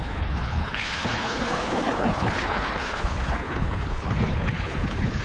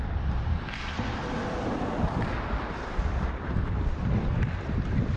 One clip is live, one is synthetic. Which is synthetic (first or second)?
first